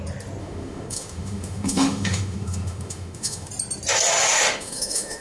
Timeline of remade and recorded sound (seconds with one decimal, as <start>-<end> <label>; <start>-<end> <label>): 0.0-0.4 recorded; 0.4-3.5 remade; 3.5-4.3 recorded; 4.3-5.2 remade